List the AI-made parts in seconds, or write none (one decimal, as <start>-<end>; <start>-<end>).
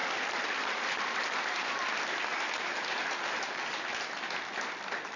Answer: 0.0-1.9; 2.3-3.9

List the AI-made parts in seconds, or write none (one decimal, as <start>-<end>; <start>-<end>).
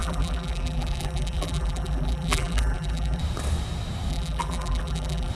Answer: 0.0-3.2; 4.1-5.3